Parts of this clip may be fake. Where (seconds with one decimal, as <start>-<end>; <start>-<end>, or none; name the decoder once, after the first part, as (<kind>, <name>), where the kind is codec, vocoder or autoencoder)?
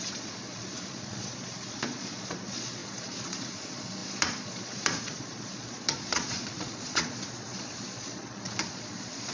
0.0-9.3 (vocoder, Vocos)